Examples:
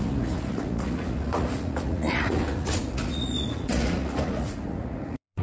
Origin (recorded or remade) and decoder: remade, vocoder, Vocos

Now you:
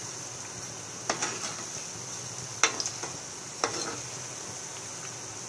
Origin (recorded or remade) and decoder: recorded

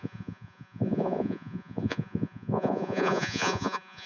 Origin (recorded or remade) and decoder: remade, vocoder, Vocos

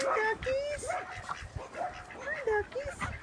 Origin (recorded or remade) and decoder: recorded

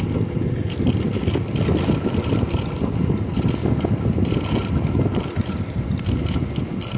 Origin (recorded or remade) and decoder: recorded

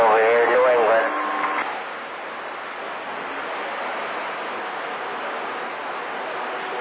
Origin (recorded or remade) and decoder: recorded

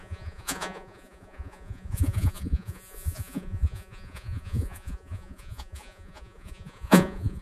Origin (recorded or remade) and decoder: remade, vocoder, Vocos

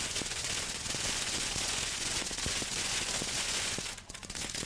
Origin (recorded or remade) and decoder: remade, vocoder, Vocos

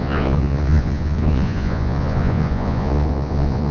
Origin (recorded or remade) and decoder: remade, vocoder, Vocos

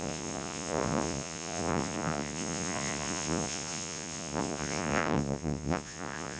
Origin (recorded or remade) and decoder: remade, vocoder, Vocos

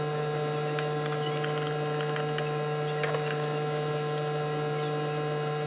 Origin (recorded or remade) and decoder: recorded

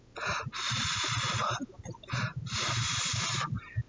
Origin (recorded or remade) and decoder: recorded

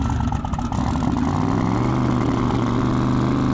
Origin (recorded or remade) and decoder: recorded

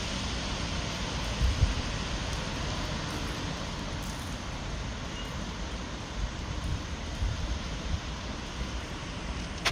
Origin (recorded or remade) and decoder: recorded